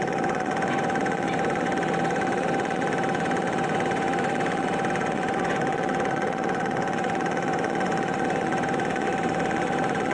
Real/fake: fake